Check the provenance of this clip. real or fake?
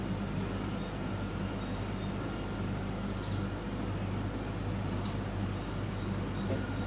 real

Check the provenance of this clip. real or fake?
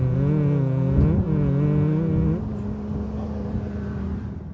real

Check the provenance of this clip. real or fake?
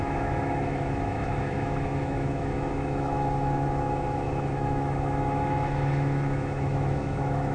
fake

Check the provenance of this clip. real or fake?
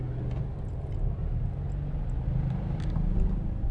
real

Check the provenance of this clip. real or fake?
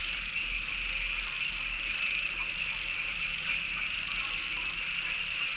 real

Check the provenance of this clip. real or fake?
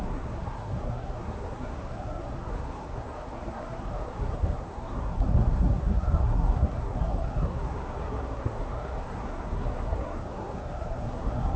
fake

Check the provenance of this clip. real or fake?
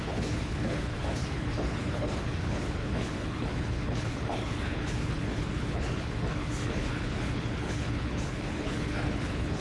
fake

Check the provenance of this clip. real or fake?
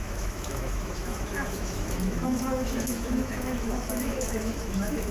fake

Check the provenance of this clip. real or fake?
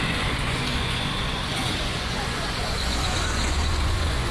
fake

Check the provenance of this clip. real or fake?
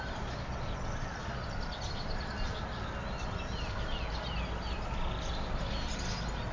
real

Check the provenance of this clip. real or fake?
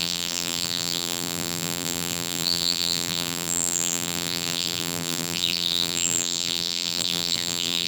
fake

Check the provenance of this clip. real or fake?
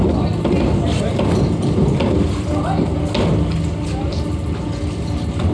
real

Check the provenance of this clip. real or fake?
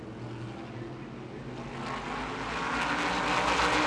real